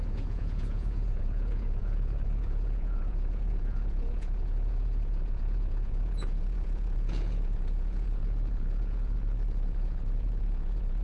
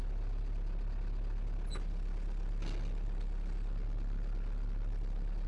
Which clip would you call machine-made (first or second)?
first